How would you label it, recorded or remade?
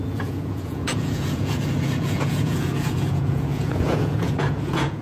remade